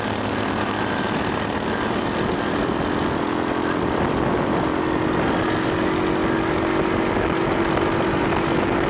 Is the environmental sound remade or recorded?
recorded